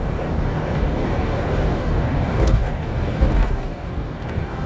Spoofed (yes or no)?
yes